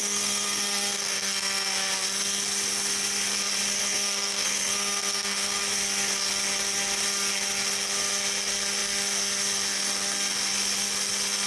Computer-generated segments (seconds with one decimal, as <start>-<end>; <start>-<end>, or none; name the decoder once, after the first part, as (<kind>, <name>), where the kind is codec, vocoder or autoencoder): 0.0-1.7 (codec, SNAC); 3.8-5.6